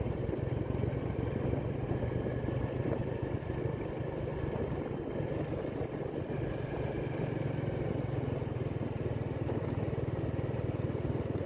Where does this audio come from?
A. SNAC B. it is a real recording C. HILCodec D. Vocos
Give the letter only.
B